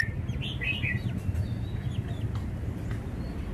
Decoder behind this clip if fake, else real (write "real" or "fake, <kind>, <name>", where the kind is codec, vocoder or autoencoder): real